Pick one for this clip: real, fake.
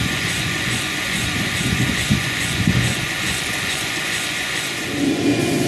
fake